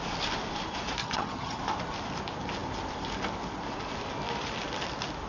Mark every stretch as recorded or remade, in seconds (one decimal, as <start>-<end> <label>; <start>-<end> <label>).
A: 0.0-1.0 recorded; 1.0-1.6 remade; 1.6-5.3 recorded